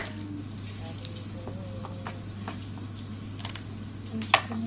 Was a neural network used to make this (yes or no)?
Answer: no